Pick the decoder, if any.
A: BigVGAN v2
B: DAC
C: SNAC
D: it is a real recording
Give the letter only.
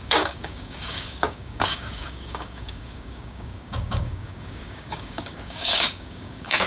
B